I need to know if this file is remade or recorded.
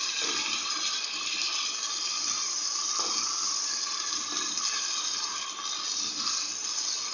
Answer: recorded